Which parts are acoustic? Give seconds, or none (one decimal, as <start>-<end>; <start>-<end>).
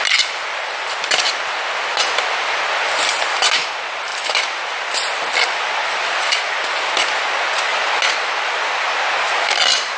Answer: 0.0-4.1; 6.4-10.0